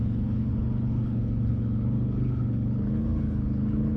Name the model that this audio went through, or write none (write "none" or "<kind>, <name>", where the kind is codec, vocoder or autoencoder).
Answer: codec, HILCodec